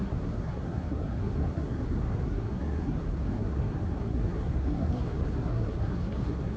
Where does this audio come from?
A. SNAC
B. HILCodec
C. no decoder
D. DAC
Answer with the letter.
A